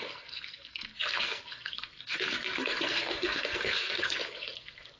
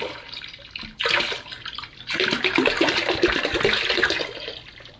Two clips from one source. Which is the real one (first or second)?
second